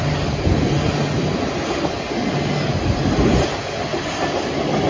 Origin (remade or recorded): recorded